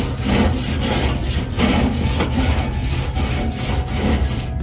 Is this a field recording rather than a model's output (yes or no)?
yes